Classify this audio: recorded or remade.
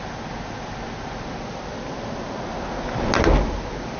recorded